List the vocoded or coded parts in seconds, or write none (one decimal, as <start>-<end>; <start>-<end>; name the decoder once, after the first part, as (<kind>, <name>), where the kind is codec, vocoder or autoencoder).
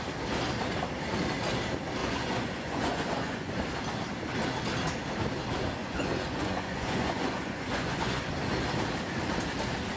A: 2.0-3.5 (vocoder, Vocos); 5.8-8.2